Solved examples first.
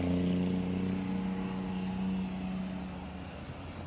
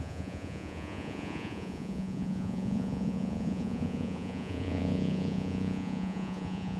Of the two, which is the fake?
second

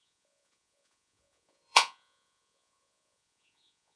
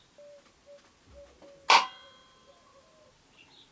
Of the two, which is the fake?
first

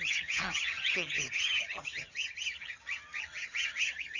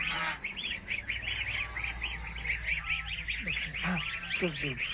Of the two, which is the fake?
first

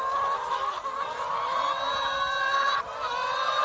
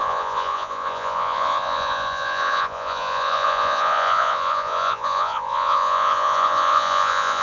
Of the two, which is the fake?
second